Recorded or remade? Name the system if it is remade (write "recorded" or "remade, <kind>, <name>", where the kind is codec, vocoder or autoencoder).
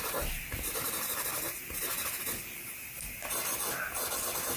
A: recorded